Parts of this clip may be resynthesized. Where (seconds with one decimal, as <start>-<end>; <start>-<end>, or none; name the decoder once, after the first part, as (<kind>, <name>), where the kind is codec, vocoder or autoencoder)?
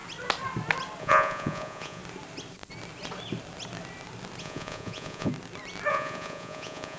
1.0-2.0 (vocoder, Vocos); 4.4-5.3; 5.9-7.0